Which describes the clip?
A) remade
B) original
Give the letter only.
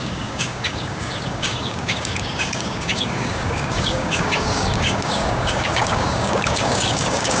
A